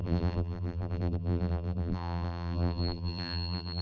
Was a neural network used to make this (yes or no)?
yes